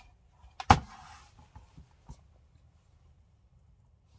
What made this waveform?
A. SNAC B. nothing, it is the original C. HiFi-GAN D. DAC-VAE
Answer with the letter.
B